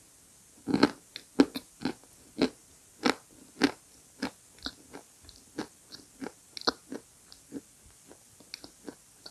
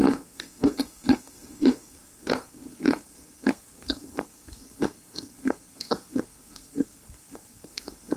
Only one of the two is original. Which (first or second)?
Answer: first